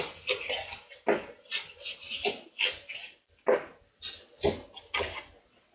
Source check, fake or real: real